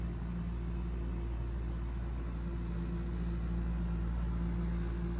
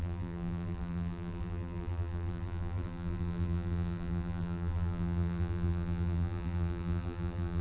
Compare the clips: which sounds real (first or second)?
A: first